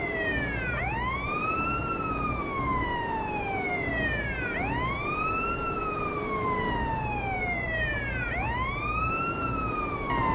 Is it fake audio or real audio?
fake